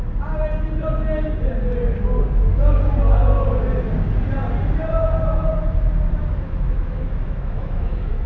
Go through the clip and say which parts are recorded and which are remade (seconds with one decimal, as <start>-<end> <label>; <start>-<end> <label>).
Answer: 0.0-6.2 recorded; 6.2-8.3 remade